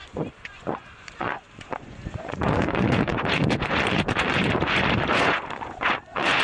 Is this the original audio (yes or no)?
no